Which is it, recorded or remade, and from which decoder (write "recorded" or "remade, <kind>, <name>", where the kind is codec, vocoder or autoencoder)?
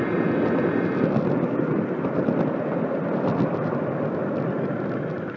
recorded